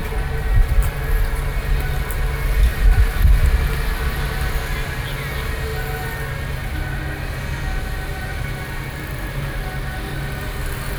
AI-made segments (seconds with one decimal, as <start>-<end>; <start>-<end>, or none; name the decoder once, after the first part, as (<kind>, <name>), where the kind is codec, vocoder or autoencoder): 0.0-1.1 (vocoder, BigVGAN v2); 2.7-3.5